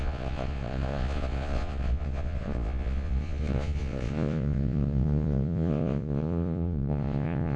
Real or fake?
fake